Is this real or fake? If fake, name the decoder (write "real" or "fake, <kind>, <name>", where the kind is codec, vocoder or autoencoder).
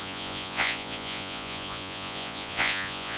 fake, vocoder, Vocos